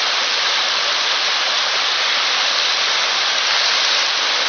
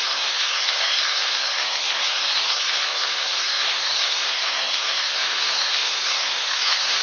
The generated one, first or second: second